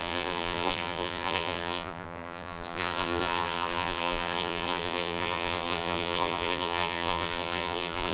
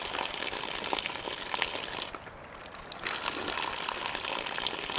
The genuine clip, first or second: second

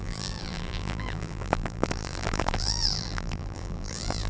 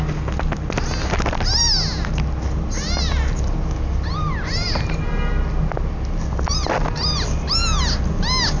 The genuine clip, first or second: second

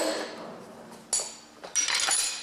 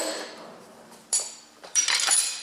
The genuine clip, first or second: first